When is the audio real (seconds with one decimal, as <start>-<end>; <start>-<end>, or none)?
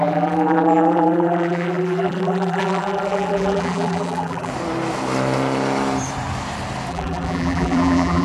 4.5-6.9